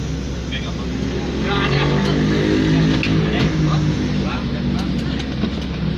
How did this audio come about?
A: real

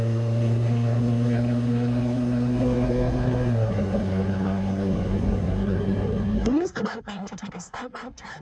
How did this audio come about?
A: fake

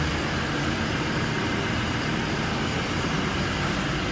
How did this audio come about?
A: real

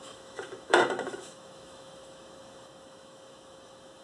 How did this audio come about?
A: fake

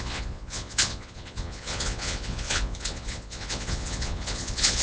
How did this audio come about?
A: fake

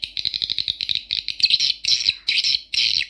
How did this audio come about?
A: real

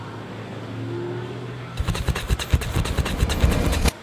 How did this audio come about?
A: real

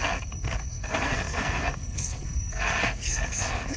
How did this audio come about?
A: fake